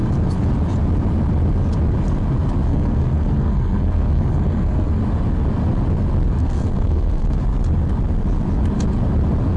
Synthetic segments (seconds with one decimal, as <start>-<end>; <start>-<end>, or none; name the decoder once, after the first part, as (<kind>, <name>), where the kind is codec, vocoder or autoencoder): 2.7-5.0 (codec, SNAC); 6.4-7.4